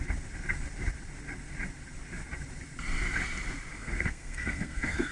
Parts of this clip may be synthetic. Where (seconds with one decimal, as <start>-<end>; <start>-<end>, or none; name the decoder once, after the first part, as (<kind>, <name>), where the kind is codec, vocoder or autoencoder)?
3.7-5.1 (codec, SNAC)